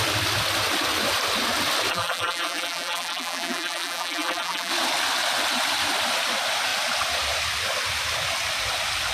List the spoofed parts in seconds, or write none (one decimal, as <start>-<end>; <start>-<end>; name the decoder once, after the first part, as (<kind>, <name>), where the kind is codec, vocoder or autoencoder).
1.9-4.7 (vocoder, BigVGAN v2)